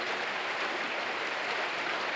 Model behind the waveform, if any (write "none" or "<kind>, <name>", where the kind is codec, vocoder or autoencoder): none